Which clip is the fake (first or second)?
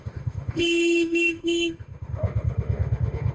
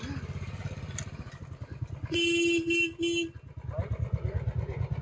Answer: first